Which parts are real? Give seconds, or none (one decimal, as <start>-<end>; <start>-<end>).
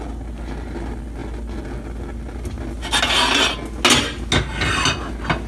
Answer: 0.0-5.5